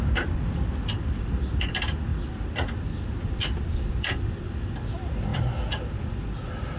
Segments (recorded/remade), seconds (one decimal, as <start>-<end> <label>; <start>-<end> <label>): 0.0-6.8 recorded